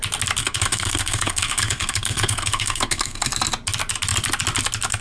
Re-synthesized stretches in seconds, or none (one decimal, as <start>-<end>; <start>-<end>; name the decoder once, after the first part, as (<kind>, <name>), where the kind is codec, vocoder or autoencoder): 0.4-3.3 (codec, SNAC)